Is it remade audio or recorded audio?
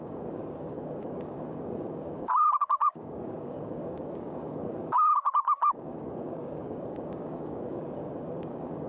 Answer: remade